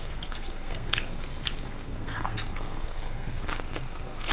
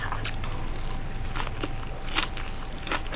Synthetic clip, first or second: first